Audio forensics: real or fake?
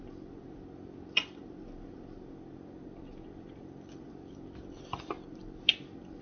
real